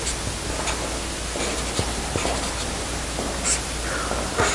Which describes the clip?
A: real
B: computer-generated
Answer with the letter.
A